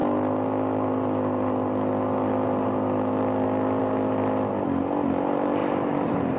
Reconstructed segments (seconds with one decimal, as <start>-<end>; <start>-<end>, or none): 3.8-6.4